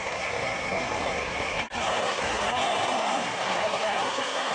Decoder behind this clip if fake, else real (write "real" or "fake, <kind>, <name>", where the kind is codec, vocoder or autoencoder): fake, codec, SNAC